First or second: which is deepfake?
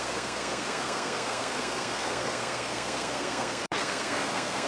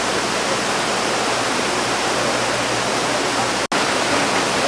first